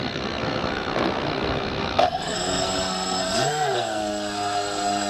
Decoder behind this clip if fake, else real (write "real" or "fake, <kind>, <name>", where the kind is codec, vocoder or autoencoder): fake, codec, SNAC